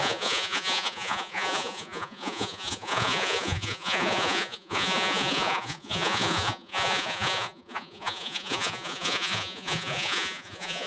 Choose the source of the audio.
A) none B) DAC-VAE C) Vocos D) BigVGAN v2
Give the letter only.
C